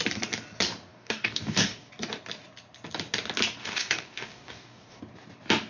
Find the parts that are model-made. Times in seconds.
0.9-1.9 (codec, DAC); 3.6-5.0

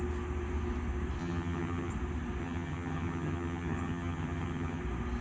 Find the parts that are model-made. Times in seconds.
1.2-1.9 (vocoder, HiFi-GAN); 2.4-4.8

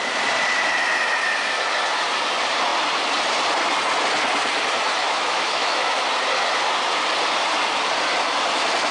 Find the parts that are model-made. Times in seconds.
5.0-6.0 (autoencoder, DAC-VAE)

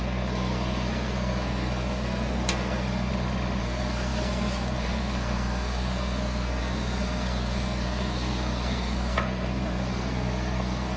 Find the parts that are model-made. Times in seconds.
0.0-3.1 (codec, SNAC); 3.6-11.0

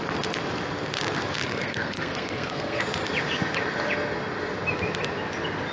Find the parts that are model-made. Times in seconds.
1.4-2.8 (codec, SNAC)

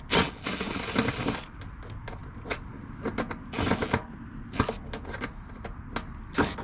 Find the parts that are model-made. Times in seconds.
none

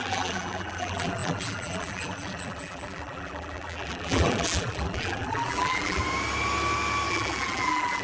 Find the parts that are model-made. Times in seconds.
0.0-6.0 (vocoder, BigVGAN v2); 7.1-8.0